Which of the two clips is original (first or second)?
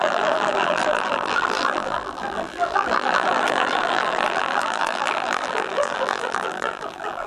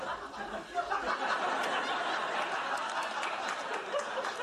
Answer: second